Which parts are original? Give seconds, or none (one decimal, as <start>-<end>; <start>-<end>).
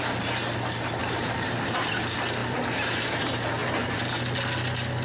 0.0-1.0; 1.9-2.4; 3.2-3.6; 4.2-5.0